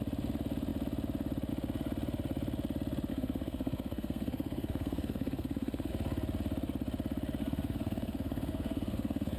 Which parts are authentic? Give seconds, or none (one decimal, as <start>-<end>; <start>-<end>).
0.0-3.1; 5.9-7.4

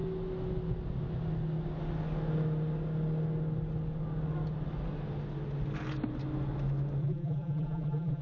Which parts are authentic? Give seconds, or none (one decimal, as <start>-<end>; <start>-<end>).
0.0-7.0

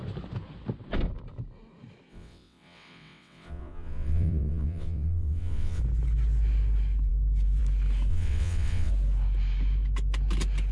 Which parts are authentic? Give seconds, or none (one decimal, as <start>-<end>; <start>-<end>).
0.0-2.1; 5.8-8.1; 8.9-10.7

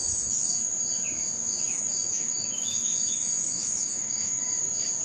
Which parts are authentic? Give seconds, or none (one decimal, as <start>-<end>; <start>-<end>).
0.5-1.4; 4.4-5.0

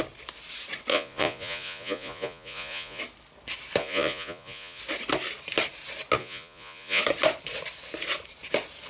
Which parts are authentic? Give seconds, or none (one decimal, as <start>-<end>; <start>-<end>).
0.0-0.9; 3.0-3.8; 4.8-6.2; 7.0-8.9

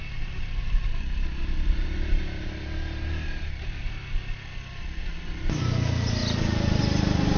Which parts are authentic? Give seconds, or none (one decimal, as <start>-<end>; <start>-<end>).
0.0-7.4

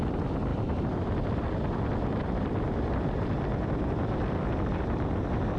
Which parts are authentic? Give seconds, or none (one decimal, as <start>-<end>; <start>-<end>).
0.0-0.5; 3.3-5.6

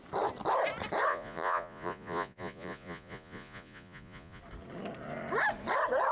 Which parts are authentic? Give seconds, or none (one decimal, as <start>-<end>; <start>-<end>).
0.0-1.1; 4.4-6.1